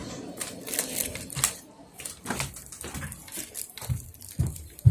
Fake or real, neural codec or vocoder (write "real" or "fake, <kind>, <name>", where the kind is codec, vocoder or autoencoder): fake, vocoder, BigVGAN v2